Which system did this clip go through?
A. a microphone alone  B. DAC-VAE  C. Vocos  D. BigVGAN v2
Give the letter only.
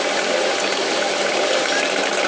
A